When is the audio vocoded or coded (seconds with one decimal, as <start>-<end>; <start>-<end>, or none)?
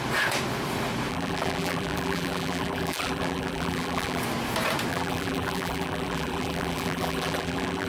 1.1-4.2; 4.9-7.9